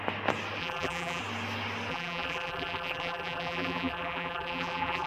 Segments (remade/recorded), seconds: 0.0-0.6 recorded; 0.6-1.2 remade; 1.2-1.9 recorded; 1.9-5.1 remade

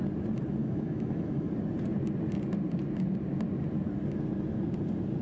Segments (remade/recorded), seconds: 0.0-0.6 recorded; 0.6-1.5 remade; 1.5-5.2 recorded

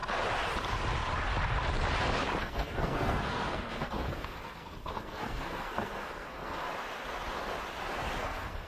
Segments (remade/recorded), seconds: 0.0-2.4 recorded; 2.4-6.7 remade; 6.7-8.2 recorded; 8.2-8.7 remade

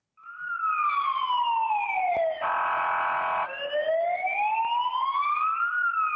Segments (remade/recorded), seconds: 0.0-6.2 recorded